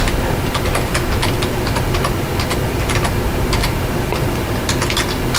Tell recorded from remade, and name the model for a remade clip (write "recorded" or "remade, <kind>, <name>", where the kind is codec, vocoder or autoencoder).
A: recorded